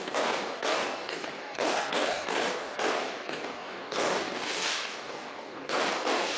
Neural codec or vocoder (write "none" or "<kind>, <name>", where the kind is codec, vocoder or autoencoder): codec, DAC